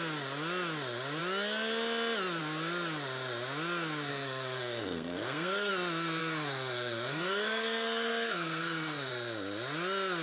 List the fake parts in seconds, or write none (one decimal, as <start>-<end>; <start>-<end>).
4.1-5.7; 6.2-9.1